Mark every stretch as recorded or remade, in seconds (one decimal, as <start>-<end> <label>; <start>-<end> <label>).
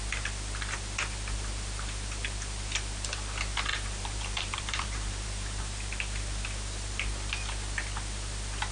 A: 0.0-3.7 recorded; 3.7-5.6 remade; 5.6-8.7 recorded